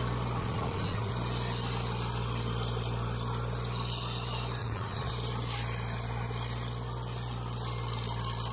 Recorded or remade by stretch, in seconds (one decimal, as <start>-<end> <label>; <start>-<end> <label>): 0.0-0.4 recorded; 0.4-1.1 remade; 1.1-4.6 recorded; 4.6-5.1 remade; 5.1-8.5 recorded

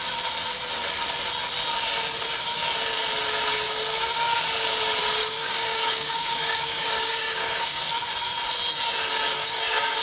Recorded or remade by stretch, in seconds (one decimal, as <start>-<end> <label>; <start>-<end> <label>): 0.0-5.2 recorded; 5.2-7.9 remade; 7.9-9.4 recorded; 9.4-10.0 remade

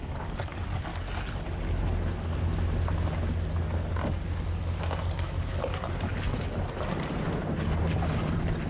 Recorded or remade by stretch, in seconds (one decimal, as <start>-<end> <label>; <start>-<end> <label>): 0.0-0.9 remade; 0.9-5.1 recorded; 5.1-6.1 remade; 6.1-8.7 recorded

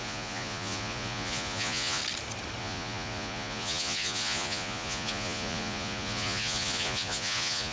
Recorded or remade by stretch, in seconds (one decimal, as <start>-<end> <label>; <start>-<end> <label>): 0.0-2.0 remade; 2.0-2.6 recorded; 2.6-7.7 remade

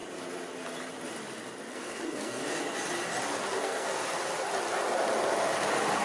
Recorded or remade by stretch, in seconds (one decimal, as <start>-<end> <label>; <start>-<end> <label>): 0.0-1.7 recorded; 1.7-2.4 remade; 2.4-3.6 recorded; 3.6-4.0 remade; 4.0-6.0 recorded

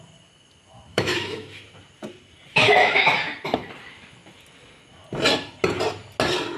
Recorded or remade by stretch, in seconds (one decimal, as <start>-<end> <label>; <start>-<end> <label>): 0.0-0.9 recorded; 0.9-1.6 remade; 1.6-2.5 recorded; 2.5-3.1 remade; 3.1-6.6 recorded